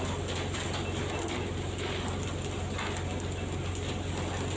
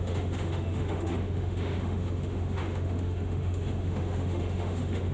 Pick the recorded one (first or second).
first